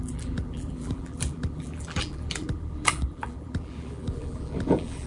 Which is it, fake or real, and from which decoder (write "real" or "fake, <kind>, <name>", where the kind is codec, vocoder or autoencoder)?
fake, vocoder, BigVGAN v2